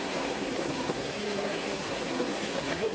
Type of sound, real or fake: fake